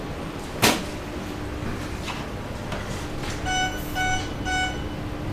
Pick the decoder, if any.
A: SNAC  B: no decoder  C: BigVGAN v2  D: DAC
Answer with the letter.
B